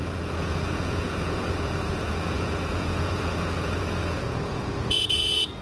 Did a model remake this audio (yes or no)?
yes